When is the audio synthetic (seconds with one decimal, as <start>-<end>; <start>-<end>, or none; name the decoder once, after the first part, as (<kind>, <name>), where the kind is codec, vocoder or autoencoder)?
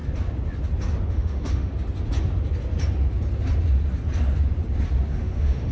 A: 1.1-1.7 (autoencoder, DAC-VAE); 5.1-5.7